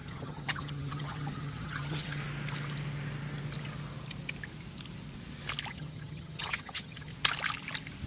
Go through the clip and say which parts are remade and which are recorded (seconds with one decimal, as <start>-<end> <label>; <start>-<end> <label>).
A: 0.0-2.2 remade; 2.2-5.7 recorded; 5.7-7.1 remade; 7.1-8.1 recorded